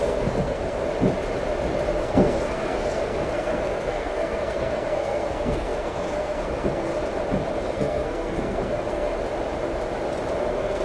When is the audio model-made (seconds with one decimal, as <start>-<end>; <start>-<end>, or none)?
0.0-0.9; 1.9-6.9; 7.6-9.1; 10.4-10.8